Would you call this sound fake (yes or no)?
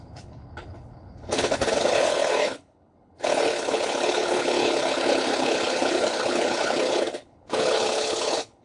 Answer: yes